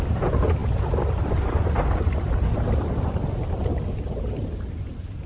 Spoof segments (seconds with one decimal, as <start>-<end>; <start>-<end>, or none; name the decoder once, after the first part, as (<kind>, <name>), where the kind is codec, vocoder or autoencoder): none